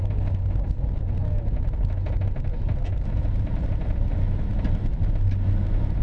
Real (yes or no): yes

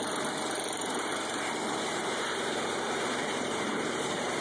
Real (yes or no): no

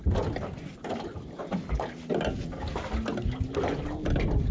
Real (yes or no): yes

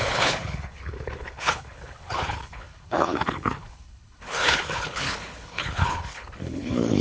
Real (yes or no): no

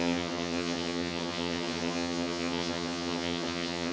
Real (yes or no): no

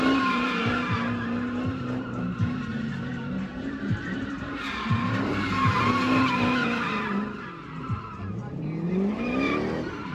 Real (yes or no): no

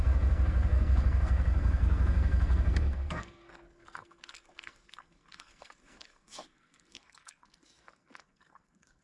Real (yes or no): no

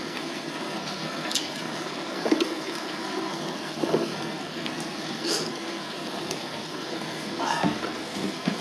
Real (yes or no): no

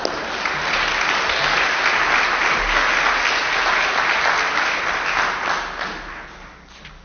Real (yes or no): yes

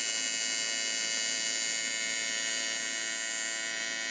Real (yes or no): yes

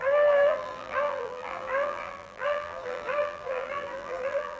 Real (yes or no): no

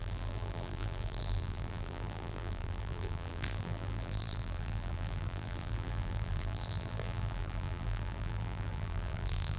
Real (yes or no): no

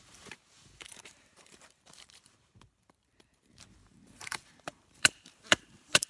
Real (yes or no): no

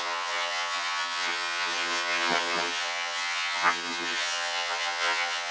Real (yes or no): no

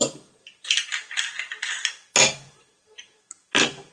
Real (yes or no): yes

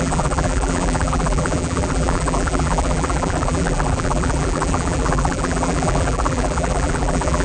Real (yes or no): no